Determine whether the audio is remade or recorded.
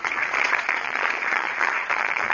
remade